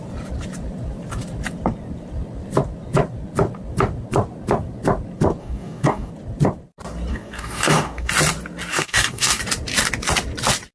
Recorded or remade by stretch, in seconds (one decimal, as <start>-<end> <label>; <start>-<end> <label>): 0.0-5.4 recorded; 5.4-6.1 remade; 6.1-7.1 recorded; 7.1-8.1 remade; 8.1-8.7 recorded; 8.7-9.4 remade; 9.4-10.7 recorded